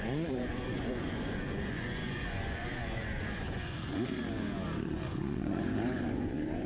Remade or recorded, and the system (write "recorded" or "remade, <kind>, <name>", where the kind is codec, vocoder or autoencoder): remade, vocoder, Vocos